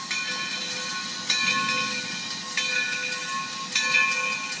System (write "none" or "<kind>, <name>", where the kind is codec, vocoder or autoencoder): none